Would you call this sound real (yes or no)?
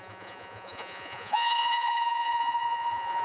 no